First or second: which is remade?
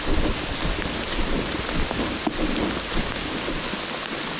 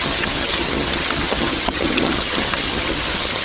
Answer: second